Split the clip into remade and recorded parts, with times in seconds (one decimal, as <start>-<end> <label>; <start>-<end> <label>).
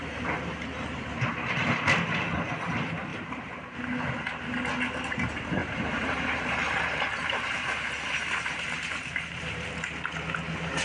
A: 0.0-3.1 recorded; 3.1-3.8 remade; 3.8-5.6 recorded; 5.6-9.7 remade; 9.7-10.8 recorded